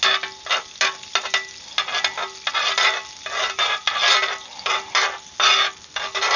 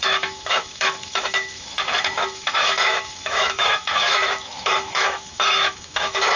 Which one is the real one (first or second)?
first